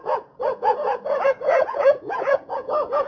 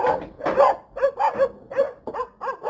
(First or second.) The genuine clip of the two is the second